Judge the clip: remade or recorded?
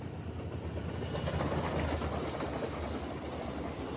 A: remade